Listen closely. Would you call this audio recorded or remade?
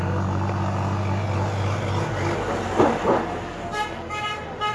recorded